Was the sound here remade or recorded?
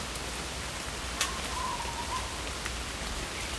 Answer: recorded